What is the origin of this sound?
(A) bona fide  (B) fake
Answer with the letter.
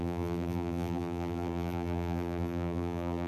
B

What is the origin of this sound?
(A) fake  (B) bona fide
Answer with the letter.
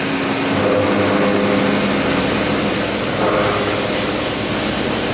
B